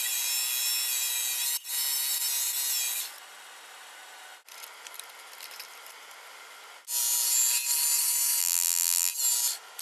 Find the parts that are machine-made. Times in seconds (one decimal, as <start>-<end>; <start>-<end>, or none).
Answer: 8.4-9.1